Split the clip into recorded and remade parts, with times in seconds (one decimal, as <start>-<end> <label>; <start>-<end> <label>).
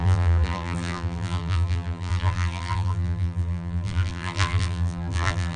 0.0-5.6 remade